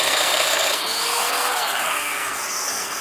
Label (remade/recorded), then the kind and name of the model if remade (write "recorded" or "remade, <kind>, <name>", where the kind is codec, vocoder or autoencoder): remade, codec, SNAC